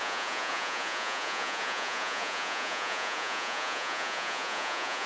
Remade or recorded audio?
remade